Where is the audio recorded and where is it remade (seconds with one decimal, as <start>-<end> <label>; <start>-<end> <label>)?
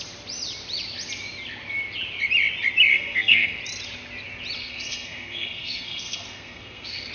0.0-2.9 recorded; 2.9-3.6 remade; 3.6-4.6 recorded; 4.6-7.1 remade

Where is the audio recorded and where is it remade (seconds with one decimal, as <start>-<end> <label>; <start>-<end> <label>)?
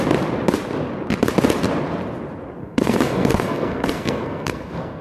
0.0-2.6 recorded; 2.6-5.0 remade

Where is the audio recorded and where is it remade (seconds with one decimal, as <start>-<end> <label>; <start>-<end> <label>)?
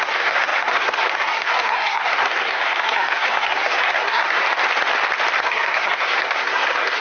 0.0-4.4 remade; 4.4-5.4 recorded; 5.4-7.0 remade